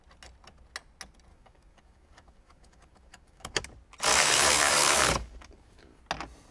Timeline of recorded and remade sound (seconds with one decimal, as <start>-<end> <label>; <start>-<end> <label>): 0.0-1.3 recorded; 1.3-3.6 remade; 3.6-4.1 recorded; 4.1-6.0 remade; 6.0-6.5 recorded